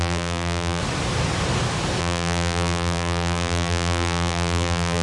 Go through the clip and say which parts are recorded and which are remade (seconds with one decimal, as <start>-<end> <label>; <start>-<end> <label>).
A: 0.0-0.8 remade; 0.8-2.0 recorded; 2.0-5.0 remade